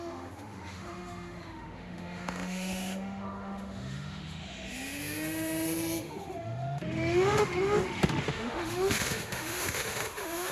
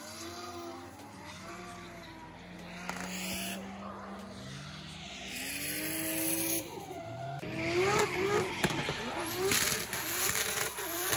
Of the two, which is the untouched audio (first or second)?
second